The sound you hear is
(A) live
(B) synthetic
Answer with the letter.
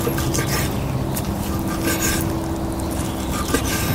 A